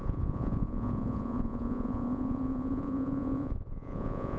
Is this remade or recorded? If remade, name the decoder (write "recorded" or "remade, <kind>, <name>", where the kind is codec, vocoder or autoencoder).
remade, vocoder, Vocos